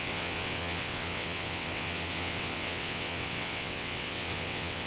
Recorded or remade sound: remade